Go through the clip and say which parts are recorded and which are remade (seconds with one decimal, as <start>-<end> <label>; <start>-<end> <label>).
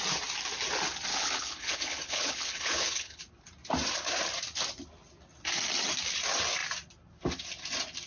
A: 0.0-1.1 recorded; 1.1-3.2 remade; 3.2-8.1 recorded